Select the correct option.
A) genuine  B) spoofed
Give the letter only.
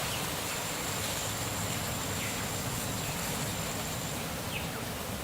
A